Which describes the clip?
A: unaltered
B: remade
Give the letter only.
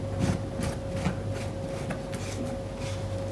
A